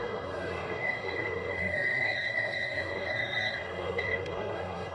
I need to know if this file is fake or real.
fake